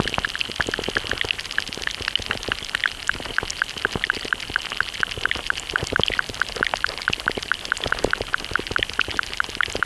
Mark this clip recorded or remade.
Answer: recorded